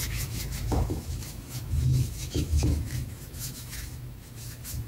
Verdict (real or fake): fake